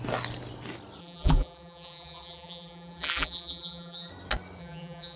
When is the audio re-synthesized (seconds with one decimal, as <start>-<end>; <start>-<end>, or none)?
1.0-4.1; 4.6-5.2